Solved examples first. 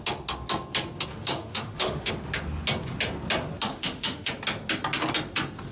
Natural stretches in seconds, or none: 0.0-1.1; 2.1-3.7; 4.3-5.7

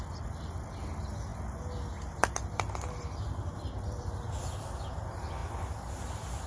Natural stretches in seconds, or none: 0.0-6.5

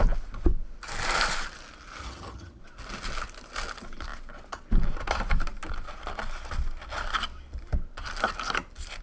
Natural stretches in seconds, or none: 0.0-2.0; 2.6-9.0